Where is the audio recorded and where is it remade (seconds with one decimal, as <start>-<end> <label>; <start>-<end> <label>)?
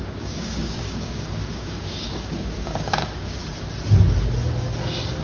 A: 0.0-3.4 remade; 3.4-5.2 recorded